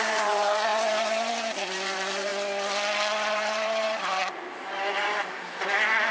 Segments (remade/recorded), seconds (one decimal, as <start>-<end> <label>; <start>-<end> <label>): 0.0-2.3 remade; 2.3-3.3 recorded; 3.3-6.1 remade